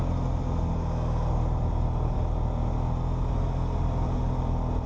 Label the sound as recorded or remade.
recorded